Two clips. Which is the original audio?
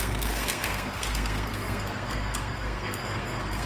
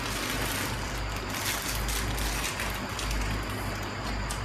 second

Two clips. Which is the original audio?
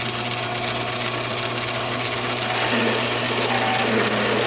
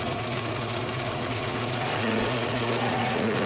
first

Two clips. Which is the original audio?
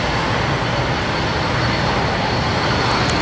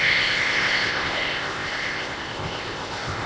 first